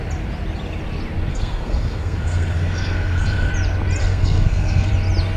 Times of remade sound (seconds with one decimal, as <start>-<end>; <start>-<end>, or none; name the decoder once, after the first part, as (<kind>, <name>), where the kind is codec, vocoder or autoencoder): 1.3-3.5 (codec, SNAC); 4.0-4.9